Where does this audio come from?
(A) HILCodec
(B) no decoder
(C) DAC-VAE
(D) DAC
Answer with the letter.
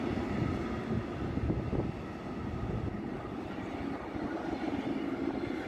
B